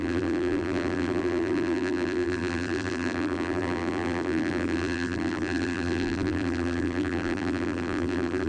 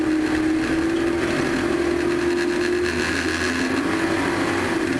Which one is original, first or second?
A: second